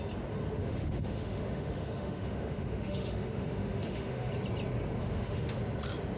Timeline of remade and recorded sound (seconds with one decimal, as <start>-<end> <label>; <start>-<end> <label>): 0.0-0.6 recorded; 0.6-4.3 remade; 4.3-5.0 recorded; 5.0-5.6 remade; 5.6-6.2 recorded